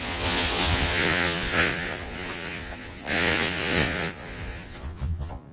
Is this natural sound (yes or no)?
no